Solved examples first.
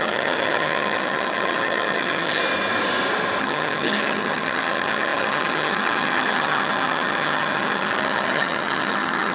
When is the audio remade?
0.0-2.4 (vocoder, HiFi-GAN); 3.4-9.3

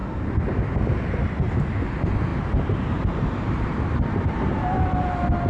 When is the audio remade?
2.3-5.1 (vocoder, BigVGAN v2)

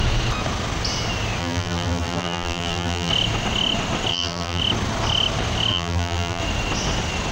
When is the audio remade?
1.4-3.1 (vocoder, BigVGAN v2); 4.1-4.6; 5.7-6.4

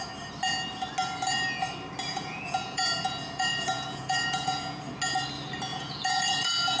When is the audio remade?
2.1-4.8 (vocoder, Vocos); 5.7-6.8